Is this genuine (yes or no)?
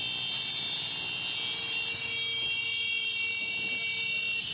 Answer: yes